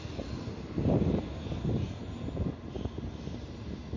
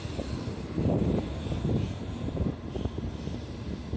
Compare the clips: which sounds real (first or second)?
first